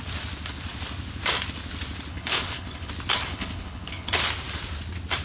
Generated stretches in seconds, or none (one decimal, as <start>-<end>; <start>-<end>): 2.1-2.9; 3.3-4.2